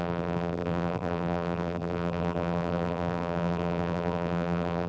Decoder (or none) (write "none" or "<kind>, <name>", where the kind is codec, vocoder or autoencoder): vocoder, BigVGAN v2